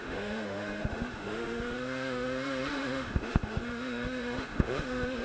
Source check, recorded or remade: remade